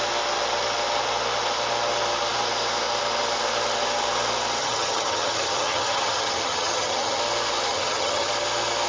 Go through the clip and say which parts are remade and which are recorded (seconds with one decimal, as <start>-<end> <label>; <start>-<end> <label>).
0.0-4.6 recorded; 4.6-7.2 remade; 7.2-7.7 recorded; 7.7-8.3 remade; 8.3-8.9 recorded